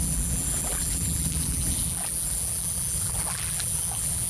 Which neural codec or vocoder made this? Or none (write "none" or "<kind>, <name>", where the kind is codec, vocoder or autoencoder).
vocoder, BigVGAN v2